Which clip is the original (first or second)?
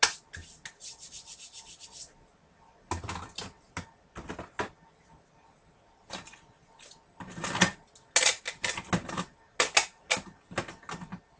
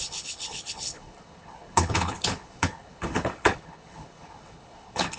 first